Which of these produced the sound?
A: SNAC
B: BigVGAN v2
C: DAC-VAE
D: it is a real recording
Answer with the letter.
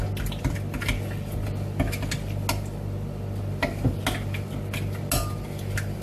D